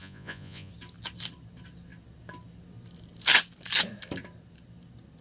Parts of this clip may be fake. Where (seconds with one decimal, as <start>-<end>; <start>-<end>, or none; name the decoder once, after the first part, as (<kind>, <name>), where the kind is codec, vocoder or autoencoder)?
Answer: 0.0-0.7 (vocoder, Vocos)